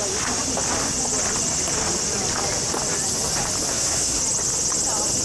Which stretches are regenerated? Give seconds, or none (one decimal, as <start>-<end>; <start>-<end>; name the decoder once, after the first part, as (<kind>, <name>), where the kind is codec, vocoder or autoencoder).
3.7-4.2 (codec, SNAC)

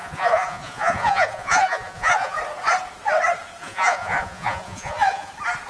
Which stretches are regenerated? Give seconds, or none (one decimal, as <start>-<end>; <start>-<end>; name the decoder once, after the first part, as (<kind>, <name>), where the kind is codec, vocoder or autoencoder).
0.0-2.4 (vocoder, Vocos); 3.6-5.3

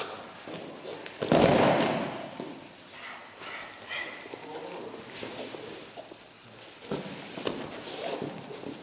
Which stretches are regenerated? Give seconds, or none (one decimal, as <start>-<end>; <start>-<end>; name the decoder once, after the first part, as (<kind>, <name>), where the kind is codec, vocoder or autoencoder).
none

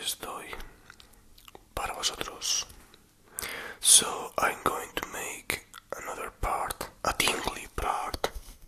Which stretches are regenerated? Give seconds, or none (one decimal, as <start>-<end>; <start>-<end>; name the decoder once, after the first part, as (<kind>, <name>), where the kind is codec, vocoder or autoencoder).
7.8-8.7 (codec, SNAC)